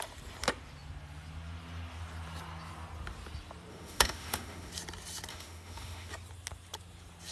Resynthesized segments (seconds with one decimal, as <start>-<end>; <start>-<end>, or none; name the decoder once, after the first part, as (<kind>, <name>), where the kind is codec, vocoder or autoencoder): 3.7-4.7 (autoencoder, DAC-VAE); 5.3-6.1